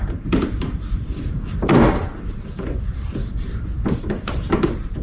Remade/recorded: remade